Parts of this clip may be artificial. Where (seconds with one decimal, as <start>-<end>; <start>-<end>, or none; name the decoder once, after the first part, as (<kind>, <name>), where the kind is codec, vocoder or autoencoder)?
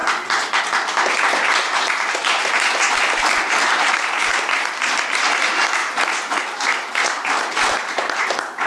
0.0-8.7 (vocoder, BigVGAN v2)